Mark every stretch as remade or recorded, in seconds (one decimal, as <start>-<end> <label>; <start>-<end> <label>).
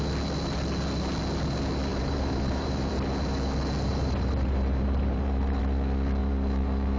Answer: 0.0-1.9 recorded; 1.9-2.9 remade; 2.9-3.9 recorded; 3.9-5.6 remade; 5.6-6.2 recorded; 6.2-7.0 remade